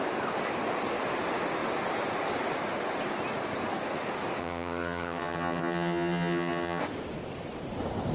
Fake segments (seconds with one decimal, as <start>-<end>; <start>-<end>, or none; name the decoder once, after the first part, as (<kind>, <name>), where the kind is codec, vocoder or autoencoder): 4.4-6.8 (vocoder, HiFi-GAN)